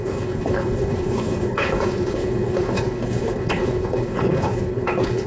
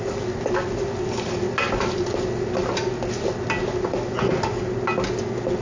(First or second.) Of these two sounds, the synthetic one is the first